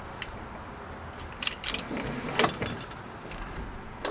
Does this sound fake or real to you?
real